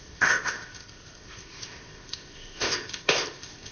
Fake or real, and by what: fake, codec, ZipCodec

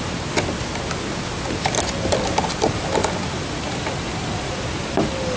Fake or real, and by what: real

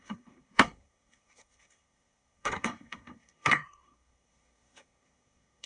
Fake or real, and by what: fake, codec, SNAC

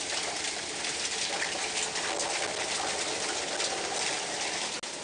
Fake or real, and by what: real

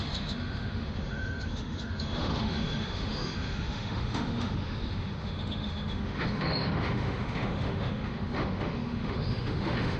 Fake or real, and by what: fake, autoencoder, DAC-VAE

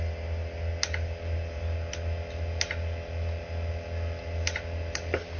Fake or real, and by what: real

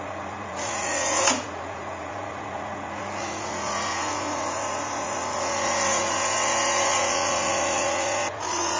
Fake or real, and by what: fake, vocoder, Vocos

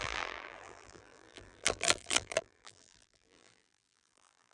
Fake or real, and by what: fake, vocoder, BigVGAN v2